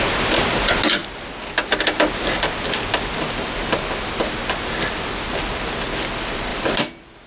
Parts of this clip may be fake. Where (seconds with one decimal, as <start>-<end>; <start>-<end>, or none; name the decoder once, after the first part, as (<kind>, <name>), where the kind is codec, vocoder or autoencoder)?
6.5-7.3 (vocoder, BigVGAN v2)